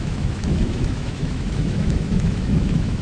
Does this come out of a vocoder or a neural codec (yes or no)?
yes